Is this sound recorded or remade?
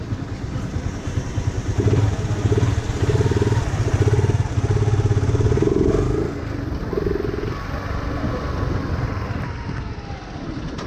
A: recorded